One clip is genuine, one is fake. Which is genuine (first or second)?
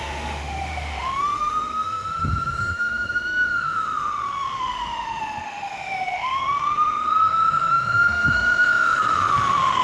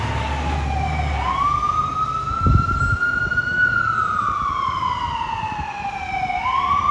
second